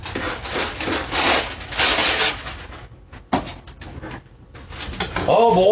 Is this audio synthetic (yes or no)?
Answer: no